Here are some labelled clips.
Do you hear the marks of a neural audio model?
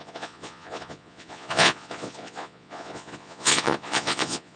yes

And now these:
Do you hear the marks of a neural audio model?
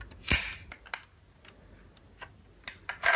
no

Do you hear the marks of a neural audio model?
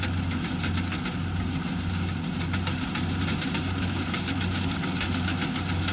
no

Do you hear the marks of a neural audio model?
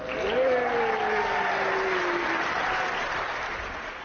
no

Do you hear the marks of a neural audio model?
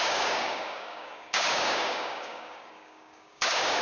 yes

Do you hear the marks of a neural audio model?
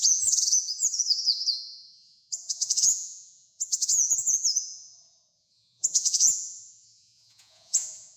yes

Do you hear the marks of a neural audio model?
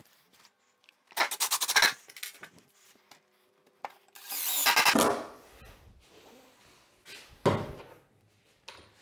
no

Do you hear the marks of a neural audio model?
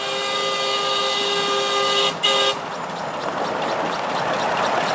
no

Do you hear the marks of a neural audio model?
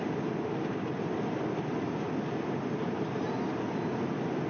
no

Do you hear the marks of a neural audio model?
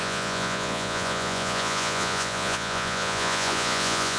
yes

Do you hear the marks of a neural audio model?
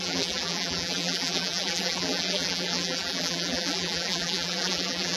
yes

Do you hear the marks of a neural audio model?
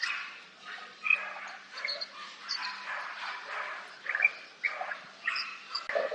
no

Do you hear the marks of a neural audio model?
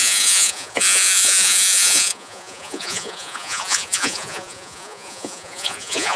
yes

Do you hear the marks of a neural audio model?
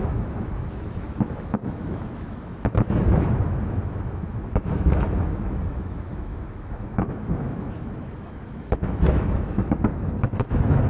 yes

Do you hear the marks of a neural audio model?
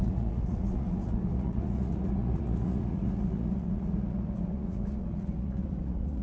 yes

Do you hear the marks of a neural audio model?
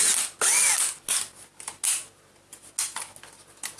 no